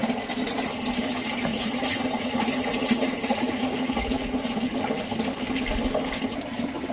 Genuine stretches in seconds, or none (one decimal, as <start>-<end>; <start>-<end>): 0.0-1.5; 4.5-6.9